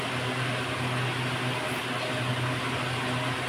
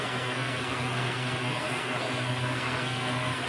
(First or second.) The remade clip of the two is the second